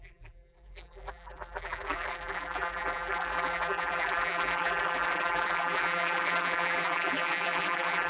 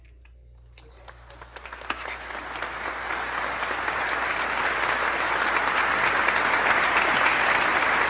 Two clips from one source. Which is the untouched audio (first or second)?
second